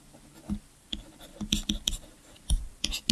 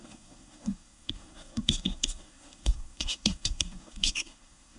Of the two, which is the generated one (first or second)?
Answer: second